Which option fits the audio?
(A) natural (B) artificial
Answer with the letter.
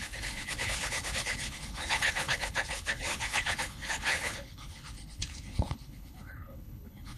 B